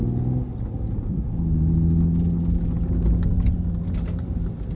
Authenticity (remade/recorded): recorded